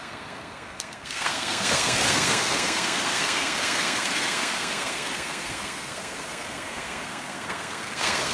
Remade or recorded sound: remade